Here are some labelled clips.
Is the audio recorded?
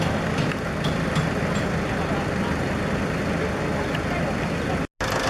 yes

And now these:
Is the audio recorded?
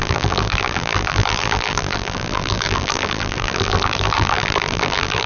no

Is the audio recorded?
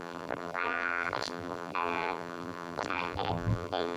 no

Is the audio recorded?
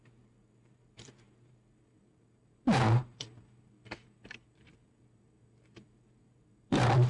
no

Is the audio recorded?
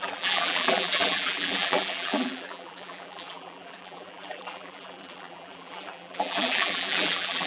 no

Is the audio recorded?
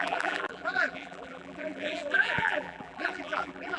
no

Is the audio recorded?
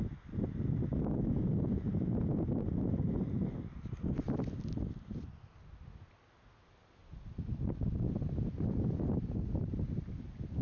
yes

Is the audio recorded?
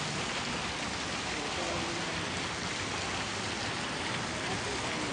yes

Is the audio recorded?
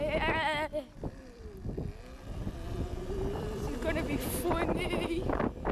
yes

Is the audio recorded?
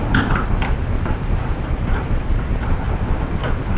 no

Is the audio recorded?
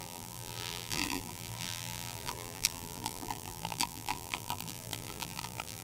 no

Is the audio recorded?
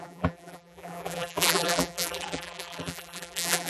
no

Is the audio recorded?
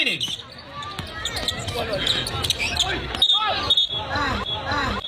yes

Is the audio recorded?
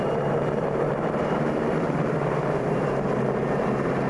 no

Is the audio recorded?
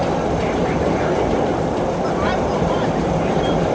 yes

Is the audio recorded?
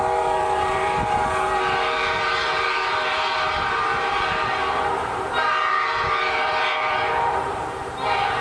no